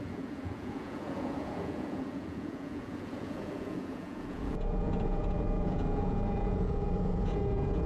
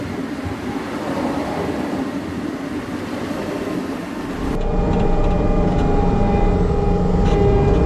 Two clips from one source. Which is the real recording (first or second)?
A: second